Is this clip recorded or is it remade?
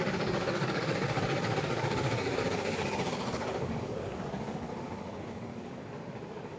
remade